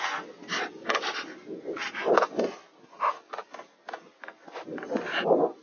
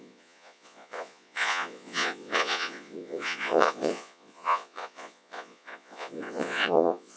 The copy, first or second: second